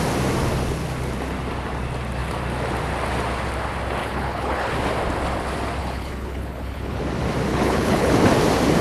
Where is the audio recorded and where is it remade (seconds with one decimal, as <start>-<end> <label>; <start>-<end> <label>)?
0.0-4.0 recorded; 4.0-4.7 remade; 4.7-5.8 recorded; 5.8-7.0 remade; 7.0-7.5 recorded; 7.5-8.1 remade; 8.1-8.8 recorded